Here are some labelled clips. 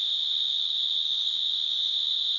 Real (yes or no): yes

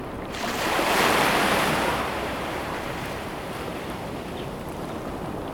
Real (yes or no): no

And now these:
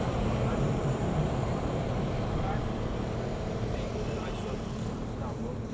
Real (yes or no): no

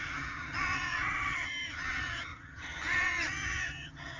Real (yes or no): no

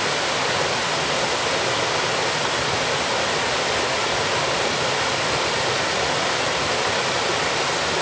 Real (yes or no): yes